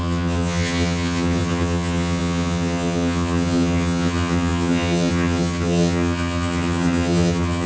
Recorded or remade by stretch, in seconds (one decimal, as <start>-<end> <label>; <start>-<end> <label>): 0.0-7.7 remade